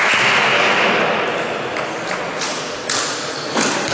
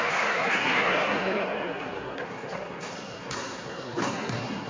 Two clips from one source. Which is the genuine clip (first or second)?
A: first